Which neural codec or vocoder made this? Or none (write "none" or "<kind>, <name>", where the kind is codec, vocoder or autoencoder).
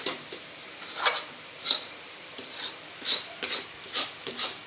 vocoder, BigVGAN v2